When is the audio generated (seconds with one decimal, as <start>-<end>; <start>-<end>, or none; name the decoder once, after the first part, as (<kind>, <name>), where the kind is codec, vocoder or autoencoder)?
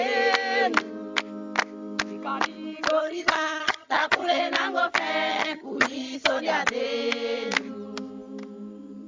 3.0-4.4 (vocoder, HiFi-GAN); 5.3-6.4